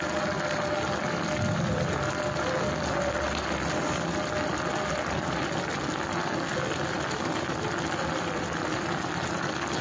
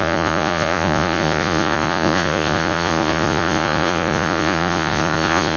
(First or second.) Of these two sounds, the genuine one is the first